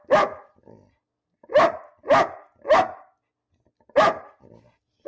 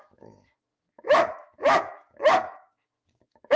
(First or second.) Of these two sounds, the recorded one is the first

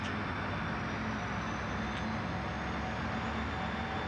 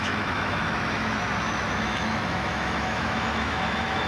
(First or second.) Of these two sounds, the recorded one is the first